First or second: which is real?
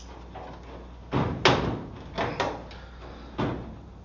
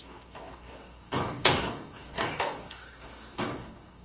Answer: first